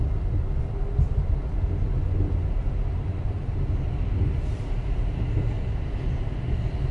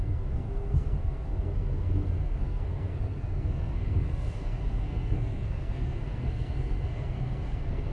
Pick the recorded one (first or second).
first